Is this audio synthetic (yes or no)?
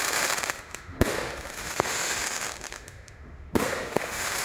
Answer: yes